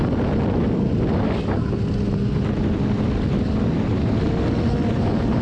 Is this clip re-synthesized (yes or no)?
no